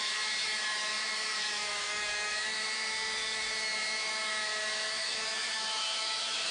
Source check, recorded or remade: remade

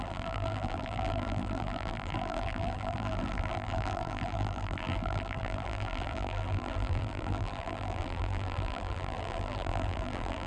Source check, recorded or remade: remade